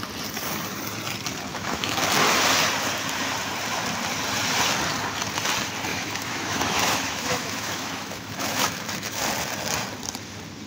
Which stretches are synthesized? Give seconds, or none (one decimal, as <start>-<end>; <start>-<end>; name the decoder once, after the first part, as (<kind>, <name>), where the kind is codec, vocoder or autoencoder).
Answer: 1.5-2.0 (autoencoder, DAC-VAE); 5.9-9.2